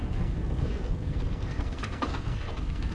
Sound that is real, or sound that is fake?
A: fake